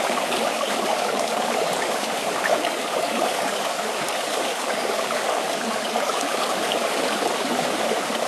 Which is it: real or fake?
fake